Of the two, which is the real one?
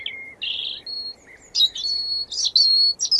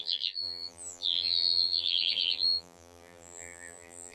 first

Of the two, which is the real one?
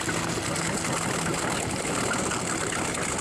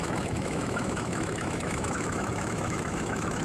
first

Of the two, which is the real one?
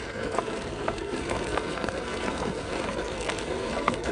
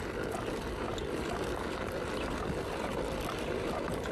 second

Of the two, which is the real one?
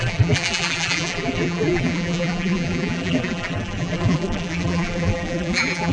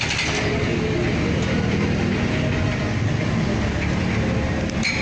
second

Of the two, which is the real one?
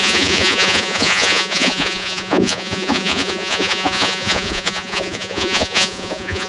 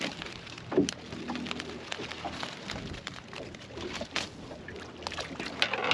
second